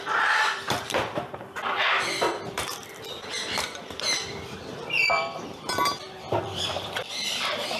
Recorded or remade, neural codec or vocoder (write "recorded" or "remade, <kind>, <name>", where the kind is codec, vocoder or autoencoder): remade, vocoder, BigVGAN v2